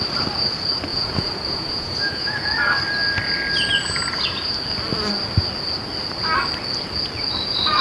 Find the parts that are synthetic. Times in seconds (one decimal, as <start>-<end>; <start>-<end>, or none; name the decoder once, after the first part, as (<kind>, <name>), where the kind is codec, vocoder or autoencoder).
0.9-2.5 (vocoder, Vocos)

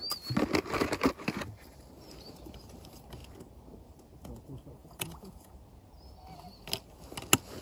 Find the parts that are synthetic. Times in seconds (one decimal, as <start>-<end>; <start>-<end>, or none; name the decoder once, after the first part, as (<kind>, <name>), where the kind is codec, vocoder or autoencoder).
4.8-5.5 (vocoder, Vocos)

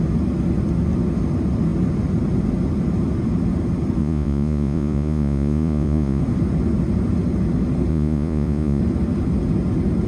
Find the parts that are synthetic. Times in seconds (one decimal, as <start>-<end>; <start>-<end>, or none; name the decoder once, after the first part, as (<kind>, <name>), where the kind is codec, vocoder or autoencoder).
4.0-6.2 (vocoder, Vocos); 7.9-8.8

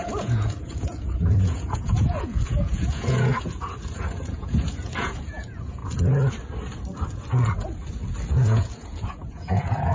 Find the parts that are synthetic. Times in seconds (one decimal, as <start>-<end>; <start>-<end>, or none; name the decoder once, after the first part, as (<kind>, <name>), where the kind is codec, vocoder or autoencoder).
0.0-3.3 (vocoder, Vocos); 3.9-5.8; 8.3-9.9

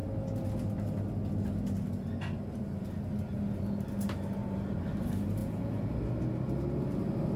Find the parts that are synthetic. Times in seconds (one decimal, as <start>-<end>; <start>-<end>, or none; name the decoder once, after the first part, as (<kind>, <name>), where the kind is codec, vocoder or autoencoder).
5.4-5.9 (vocoder, Vocos)